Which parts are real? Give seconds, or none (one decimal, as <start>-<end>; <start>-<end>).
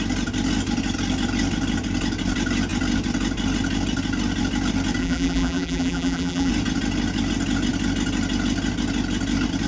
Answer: 0.0-5.0; 6.5-9.7